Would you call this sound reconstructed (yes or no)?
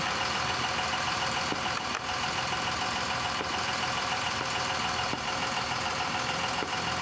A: yes